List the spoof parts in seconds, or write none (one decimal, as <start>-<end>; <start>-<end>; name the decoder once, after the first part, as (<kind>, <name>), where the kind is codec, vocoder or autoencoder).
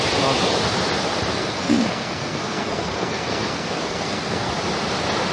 1.3-4.5 (codec, SNAC)